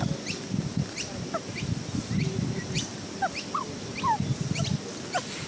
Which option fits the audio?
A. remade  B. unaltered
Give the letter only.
B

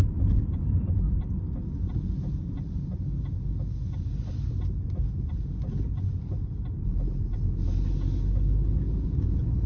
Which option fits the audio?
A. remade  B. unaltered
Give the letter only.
B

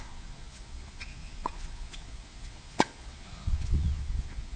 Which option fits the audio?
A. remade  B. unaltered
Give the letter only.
A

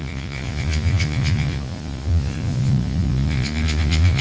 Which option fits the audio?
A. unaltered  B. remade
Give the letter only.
B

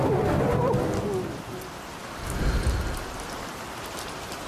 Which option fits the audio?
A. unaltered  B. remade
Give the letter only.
A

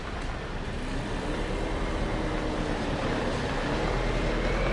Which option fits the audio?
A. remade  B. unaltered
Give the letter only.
B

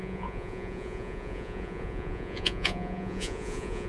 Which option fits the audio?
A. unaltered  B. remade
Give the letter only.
B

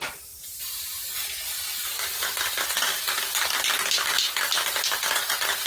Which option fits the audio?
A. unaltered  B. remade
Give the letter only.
A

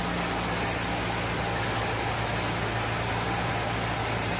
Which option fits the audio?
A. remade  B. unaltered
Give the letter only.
B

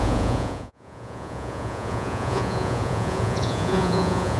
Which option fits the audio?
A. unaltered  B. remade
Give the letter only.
B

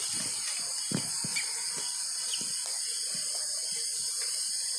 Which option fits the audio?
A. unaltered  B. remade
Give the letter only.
A